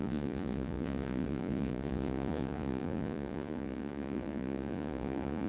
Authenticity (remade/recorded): remade